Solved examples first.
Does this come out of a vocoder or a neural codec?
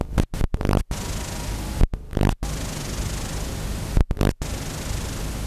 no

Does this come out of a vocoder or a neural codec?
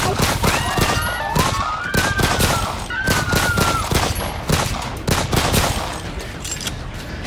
no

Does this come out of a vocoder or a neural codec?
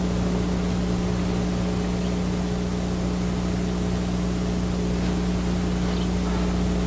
no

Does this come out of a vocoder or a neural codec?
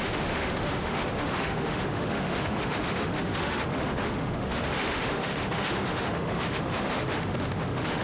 yes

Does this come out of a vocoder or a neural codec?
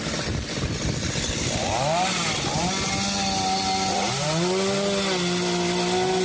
no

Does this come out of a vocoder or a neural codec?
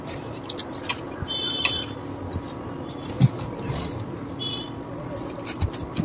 no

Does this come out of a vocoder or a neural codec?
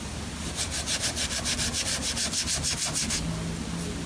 no